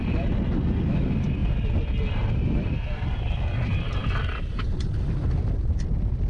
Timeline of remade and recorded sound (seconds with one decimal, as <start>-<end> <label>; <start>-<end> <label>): 0.0-6.3 recorded